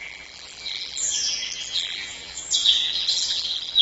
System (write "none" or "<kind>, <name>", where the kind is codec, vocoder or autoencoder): vocoder, BigVGAN v2